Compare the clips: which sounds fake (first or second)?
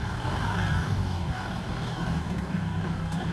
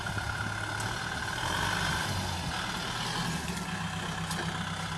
first